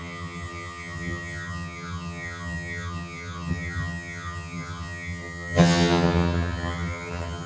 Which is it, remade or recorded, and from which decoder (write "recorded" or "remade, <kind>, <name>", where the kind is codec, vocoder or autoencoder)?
remade, vocoder, HiFi-GAN